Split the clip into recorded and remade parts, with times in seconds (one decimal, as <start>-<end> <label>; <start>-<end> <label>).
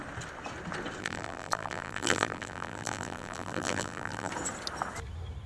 0.0-1.0 recorded; 1.0-4.3 remade; 4.3-5.5 recorded